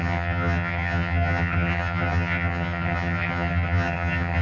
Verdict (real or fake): fake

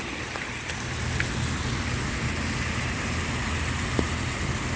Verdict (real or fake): real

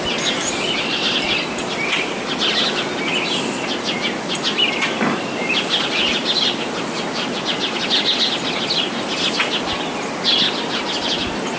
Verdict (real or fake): real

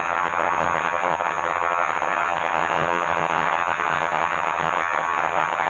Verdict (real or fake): fake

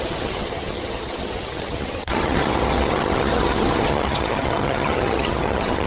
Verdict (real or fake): fake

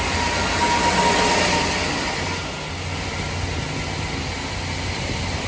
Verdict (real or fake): real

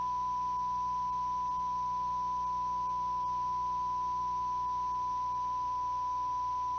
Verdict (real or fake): real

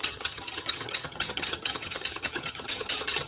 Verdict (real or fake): fake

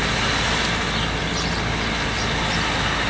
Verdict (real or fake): real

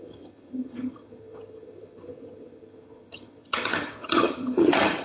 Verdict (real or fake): fake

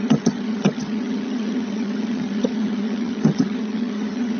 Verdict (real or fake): fake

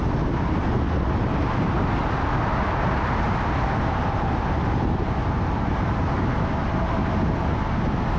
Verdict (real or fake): real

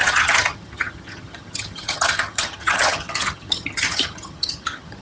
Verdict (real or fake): fake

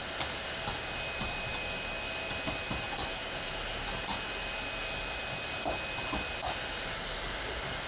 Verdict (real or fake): real